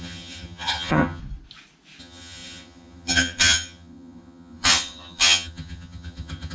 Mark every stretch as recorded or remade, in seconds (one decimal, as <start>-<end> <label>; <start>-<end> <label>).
0.0-1.2 remade; 1.2-2.0 recorded; 2.0-6.5 remade